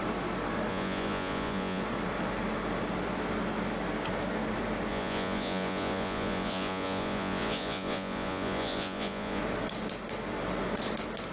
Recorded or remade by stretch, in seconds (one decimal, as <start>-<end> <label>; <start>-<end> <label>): 0.0-0.7 recorded; 0.7-1.8 remade; 1.8-4.9 recorded; 4.9-9.4 remade; 9.4-11.3 recorded